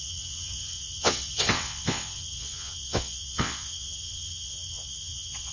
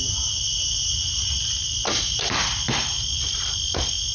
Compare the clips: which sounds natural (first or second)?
second